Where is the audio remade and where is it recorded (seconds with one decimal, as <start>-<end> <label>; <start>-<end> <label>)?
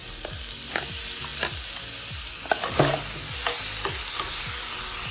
0.0-5.1 recorded